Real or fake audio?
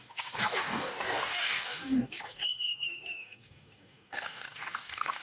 fake